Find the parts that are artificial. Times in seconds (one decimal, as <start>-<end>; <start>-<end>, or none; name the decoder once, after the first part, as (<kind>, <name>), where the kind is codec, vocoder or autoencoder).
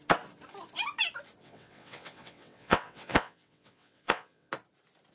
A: 1.4-4.5 (vocoder, WaveNeXt)